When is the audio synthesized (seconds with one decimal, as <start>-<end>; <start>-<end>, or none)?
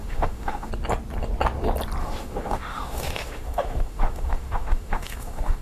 0.0-0.7; 2.0-5.6